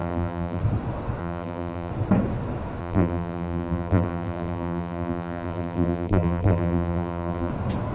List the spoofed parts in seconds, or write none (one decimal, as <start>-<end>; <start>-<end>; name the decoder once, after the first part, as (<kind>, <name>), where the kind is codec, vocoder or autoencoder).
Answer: 0.0-0.6 (vocoder, BigVGAN v2); 1.2-1.9; 2.8-7.5